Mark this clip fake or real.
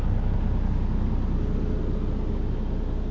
real